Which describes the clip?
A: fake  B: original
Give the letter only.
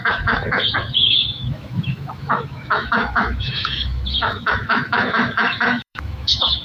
A